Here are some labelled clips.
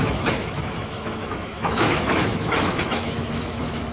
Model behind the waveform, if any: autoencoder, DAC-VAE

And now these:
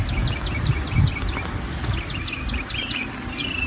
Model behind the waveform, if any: none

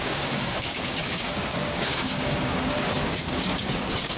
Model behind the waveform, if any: codec, DAC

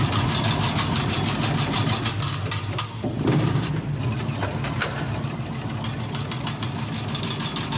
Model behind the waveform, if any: none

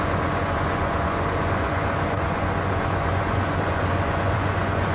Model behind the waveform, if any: vocoder, Vocos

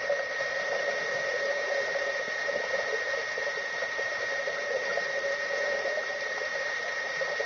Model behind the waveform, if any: none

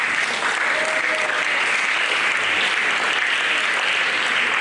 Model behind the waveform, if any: none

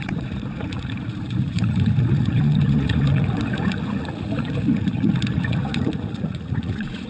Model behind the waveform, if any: vocoder, Vocos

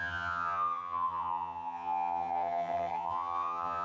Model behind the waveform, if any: vocoder, HiFi-GAN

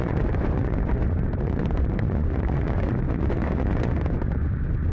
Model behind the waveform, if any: vocoder, Vocos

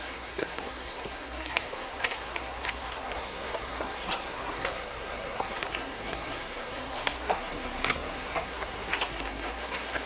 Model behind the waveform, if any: codec, SNAC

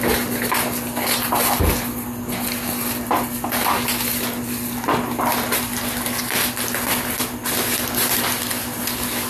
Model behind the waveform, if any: none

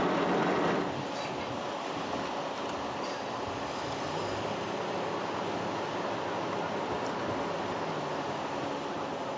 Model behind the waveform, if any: none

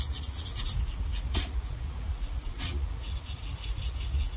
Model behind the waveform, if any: vocoder, Vocos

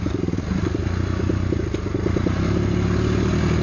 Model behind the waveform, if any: none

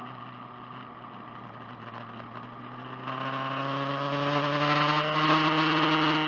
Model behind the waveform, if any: none